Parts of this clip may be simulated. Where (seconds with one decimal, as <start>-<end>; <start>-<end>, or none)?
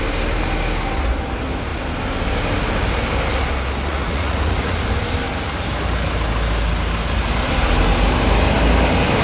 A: 3.9-4.8